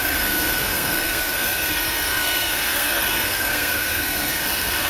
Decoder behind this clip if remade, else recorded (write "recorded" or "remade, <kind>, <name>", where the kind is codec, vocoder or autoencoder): remade, codec, SNAC